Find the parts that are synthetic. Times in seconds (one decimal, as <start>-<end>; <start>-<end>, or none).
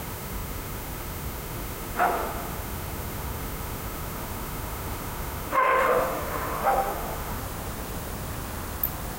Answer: 0.0-7.4